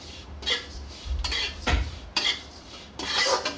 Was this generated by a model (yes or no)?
yes